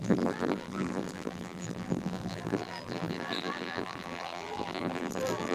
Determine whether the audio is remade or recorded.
remade